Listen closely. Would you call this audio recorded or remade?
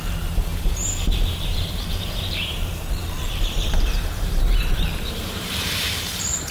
remade